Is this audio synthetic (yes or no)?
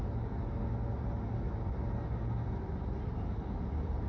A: no